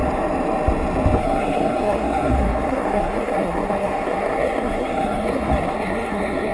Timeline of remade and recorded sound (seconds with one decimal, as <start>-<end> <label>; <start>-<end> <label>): 0.0-1.2 recorded; 1.2-6.5 remade

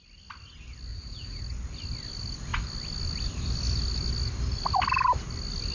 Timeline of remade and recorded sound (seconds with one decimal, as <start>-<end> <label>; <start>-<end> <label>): 0.0-0.9 recorded; 0.9-1.4 remade; 1.4-5.7 recorded

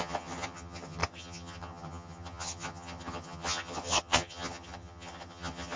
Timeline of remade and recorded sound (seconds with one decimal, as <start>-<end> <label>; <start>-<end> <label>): 0.0-5.8 remade